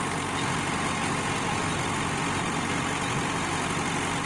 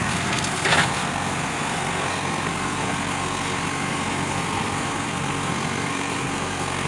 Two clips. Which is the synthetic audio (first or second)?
second